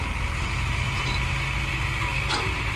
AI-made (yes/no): no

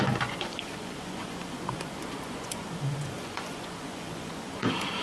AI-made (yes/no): yes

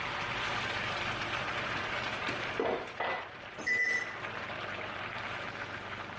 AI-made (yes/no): no